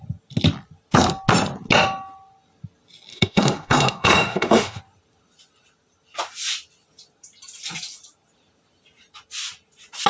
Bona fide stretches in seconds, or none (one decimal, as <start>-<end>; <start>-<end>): 0.0-3.1; 4.8-10.1